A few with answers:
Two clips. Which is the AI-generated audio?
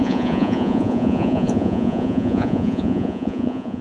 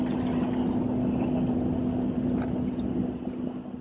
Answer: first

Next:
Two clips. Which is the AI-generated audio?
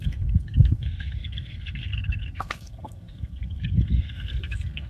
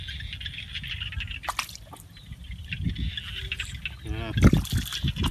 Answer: first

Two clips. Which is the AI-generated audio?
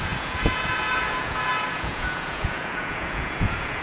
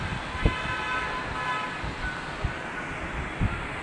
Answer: first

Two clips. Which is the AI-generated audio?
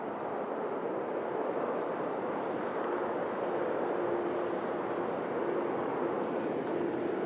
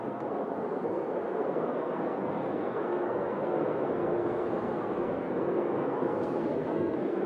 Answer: second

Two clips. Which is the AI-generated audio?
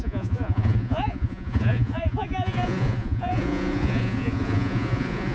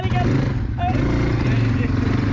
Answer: first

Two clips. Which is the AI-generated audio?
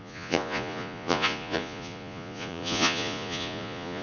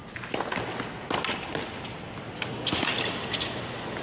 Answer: first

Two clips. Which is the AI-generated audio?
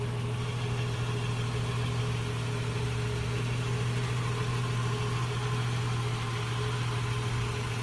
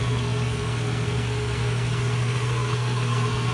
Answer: second